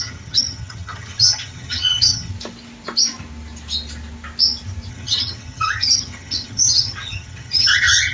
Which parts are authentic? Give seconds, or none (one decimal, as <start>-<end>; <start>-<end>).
2.3-4.9